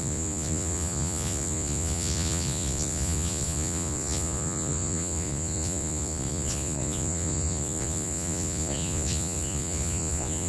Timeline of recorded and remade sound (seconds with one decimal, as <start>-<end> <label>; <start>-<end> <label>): 0.0-10.5 remade